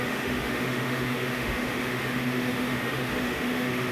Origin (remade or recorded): remade